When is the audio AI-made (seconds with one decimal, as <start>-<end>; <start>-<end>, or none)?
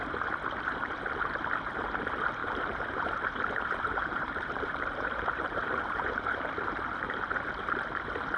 2.4-6.5